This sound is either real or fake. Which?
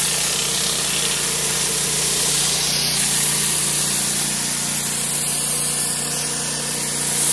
real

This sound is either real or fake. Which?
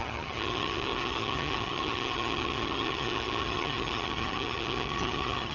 fake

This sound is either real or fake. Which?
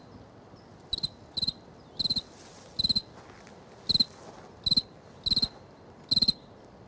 real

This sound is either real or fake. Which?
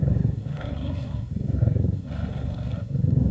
fake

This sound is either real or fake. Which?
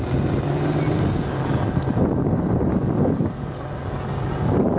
real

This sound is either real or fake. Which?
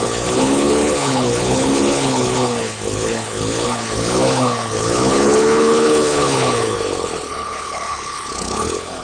fake